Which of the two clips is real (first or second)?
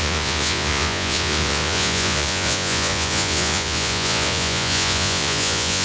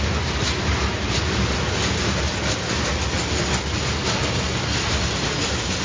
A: second